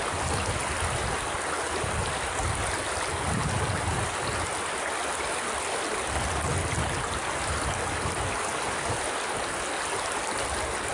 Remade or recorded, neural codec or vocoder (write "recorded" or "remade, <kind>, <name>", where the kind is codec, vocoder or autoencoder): recorded